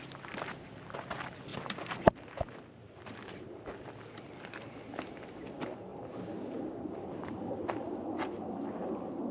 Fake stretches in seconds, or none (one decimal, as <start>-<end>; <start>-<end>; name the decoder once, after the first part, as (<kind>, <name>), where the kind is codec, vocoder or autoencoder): 1.5-2.0 (vocoder, BigVGAN v2); 5.9-8.0